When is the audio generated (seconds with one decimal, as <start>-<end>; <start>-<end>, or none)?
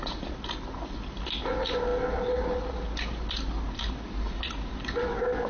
none